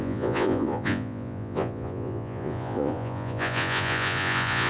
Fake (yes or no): yes